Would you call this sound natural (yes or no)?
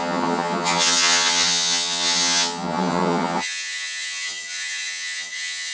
no